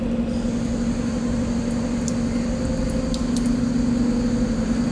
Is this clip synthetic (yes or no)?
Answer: no